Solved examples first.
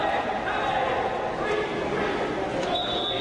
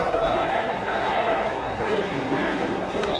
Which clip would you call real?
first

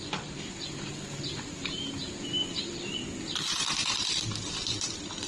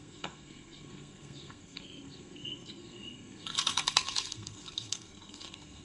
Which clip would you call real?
first